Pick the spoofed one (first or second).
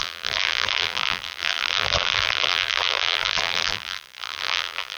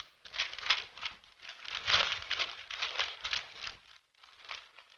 first